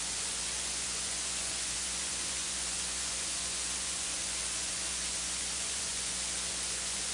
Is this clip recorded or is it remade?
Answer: remade